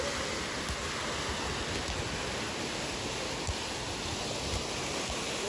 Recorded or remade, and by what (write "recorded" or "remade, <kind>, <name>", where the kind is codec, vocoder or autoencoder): recorded